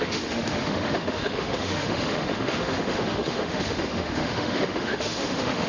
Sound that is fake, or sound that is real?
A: fake